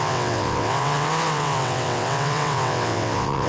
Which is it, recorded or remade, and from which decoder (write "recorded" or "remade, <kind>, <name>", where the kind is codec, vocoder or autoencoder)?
remade, vocoder, WaveNeXt